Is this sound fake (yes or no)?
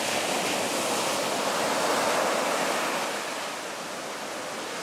no